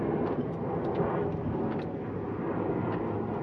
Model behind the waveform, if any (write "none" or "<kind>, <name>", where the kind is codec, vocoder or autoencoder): none